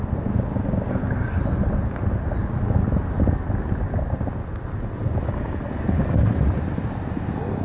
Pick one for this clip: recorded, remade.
recorded